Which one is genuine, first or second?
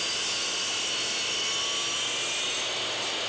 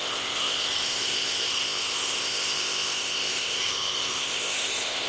first